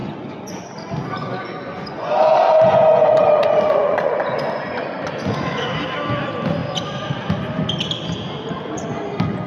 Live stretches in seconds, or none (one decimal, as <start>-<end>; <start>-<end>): 0.6-1.2; 5.7-9.5